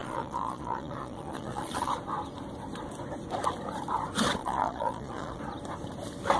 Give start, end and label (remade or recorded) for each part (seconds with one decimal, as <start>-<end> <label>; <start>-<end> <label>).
0.0-1.9 remade; 1.9-4.4 recorded; 4.4-5.4 remade; 5.4-6.4 recorded